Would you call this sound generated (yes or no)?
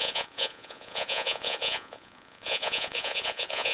yes